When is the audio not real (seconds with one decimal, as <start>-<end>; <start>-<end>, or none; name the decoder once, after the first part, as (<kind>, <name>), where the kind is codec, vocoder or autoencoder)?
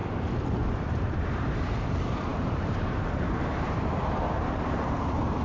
0.5-5.4 (vocoder, BigVGAN v2)